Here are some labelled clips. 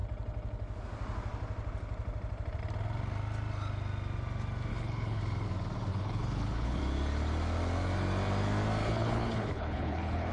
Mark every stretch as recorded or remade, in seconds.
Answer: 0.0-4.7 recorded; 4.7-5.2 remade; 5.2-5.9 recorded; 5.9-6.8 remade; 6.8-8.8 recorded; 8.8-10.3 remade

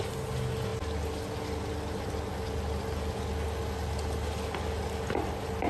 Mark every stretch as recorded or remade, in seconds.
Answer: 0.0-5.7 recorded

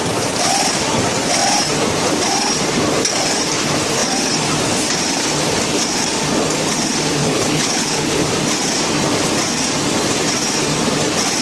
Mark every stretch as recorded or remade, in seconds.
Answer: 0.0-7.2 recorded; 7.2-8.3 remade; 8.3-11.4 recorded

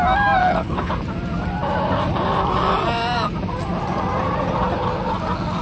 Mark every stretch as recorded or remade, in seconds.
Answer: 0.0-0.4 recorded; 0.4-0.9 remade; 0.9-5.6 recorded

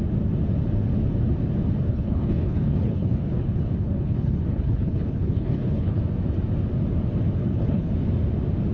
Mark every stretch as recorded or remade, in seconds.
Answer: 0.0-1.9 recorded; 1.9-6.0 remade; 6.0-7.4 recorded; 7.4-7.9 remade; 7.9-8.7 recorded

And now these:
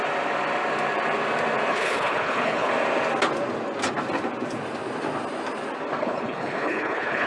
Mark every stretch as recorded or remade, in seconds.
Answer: 0.0-1.7 recorded; 1.7-2.7 remade; 2.7-6.0 recorded; 6.0-7.3 remade

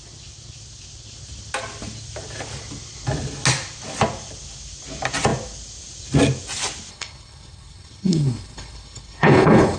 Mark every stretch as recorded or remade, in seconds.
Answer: 0.0-6.9 recorded; 6.9-9.8 remade